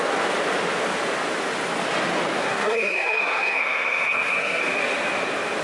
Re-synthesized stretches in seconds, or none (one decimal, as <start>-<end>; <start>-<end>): 2.4-4.6